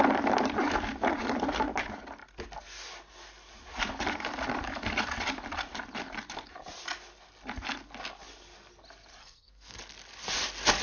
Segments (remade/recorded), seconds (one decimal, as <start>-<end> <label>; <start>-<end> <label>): 0.0-9.2 recorded; 9.2-9.8 remade; 9.8-10.8 recorded